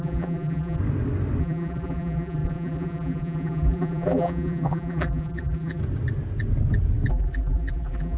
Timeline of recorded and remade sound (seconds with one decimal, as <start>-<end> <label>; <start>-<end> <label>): 0.0-0.8 remade; 0.8-1.4 recorded; 1.4-5.8 remade; 5.8-7.1 recorded; 7.1-8.2 remade